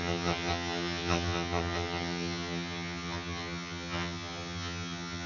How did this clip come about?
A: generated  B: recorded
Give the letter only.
A